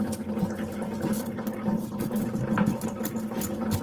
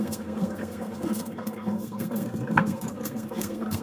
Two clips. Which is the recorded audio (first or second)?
first